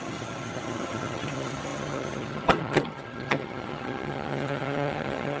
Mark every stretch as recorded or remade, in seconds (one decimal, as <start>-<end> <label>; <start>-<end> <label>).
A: 0.0-5.4 remade